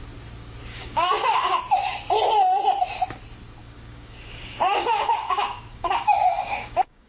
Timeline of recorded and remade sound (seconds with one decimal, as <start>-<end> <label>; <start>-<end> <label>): 0.0-0.7 recorded; 0.7-1.6 remade; 1.6-3.6 recorded; 3.6-7.1 remade